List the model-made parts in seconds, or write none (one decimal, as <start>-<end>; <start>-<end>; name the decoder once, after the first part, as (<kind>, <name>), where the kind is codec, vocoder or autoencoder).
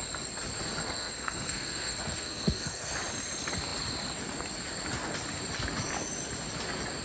0.8-2.9 (codec, SNAC)